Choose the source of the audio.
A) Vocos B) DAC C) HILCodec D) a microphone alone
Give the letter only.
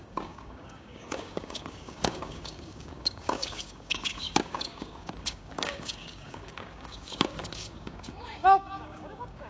B